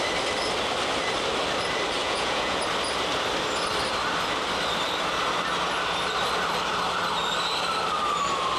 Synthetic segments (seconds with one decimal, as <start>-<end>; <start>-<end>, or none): 2.0-2.6